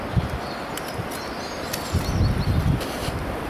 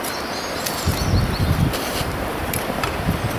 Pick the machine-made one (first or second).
second